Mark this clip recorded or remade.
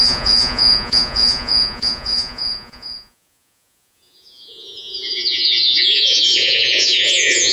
remade